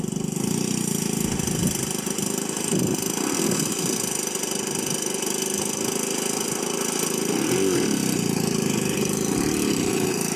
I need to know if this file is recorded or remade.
recorded